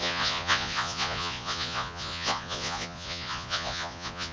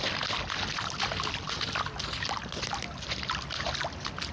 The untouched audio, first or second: second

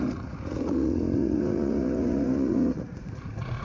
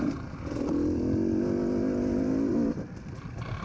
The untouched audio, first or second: second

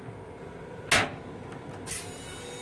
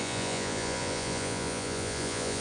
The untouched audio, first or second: first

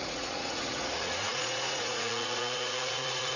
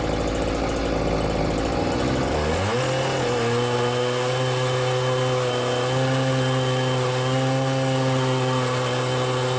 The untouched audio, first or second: second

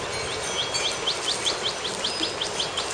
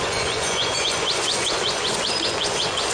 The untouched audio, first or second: first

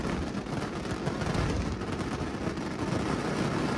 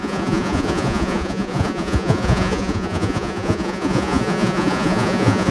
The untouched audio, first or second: first